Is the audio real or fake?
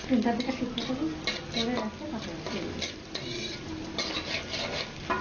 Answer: real